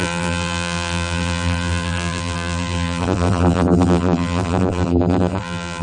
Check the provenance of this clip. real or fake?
fake